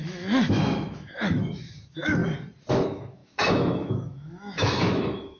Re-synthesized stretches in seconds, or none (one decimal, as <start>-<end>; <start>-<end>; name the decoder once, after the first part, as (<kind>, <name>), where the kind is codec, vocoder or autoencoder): 0.0-2.2 (autoencoder, DAC-VAE); 2.7-5.4